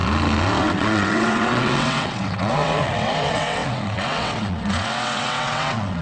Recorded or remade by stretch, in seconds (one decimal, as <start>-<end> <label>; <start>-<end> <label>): 0.0-0.6 recorded; 0.6-6.0 remade